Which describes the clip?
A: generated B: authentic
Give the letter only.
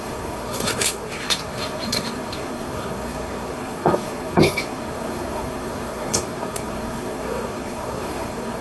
A